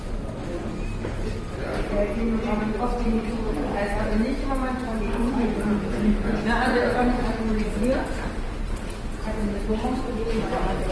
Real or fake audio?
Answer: real